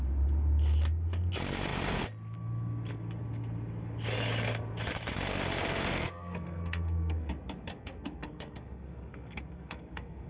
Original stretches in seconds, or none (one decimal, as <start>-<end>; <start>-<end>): 0.0-6.0; 7.3-7.7